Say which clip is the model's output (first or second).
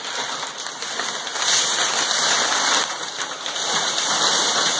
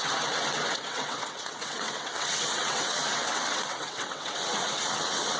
second